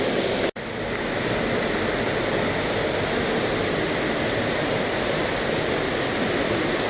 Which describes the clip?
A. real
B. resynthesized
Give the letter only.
A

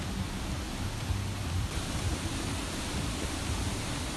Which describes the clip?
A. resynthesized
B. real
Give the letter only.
B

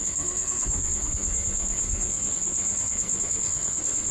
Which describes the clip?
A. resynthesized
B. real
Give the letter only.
A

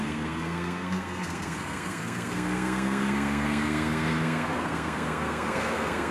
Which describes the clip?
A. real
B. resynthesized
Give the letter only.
B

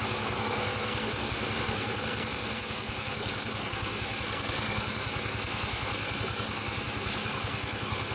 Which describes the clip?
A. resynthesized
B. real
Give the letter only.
A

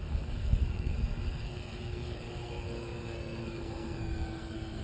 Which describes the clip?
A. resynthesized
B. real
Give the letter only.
A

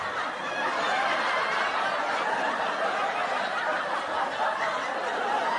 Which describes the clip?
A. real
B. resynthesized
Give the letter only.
A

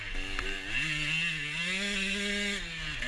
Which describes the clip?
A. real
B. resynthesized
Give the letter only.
A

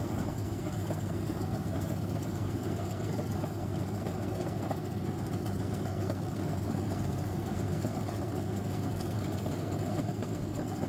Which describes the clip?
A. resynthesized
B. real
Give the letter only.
A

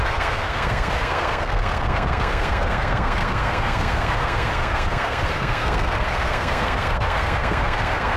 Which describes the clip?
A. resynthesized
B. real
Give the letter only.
A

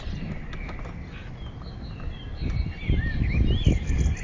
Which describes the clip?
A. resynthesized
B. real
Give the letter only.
B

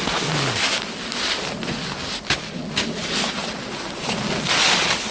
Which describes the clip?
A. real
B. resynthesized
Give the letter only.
A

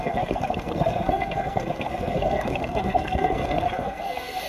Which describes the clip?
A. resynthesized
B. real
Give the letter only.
A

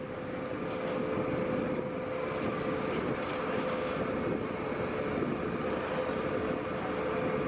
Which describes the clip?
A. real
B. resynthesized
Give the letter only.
A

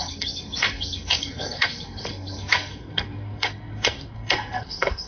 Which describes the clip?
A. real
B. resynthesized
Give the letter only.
B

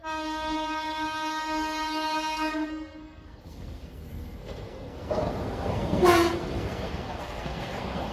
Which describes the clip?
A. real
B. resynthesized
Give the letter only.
B